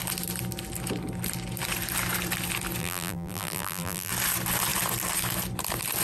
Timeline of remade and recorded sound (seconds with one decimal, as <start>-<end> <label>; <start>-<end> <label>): 0.0-2.8 recorded; 2.8-4.1 remade; 4.1-6.0 recorded